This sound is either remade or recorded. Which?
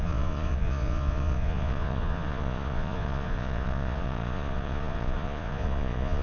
remade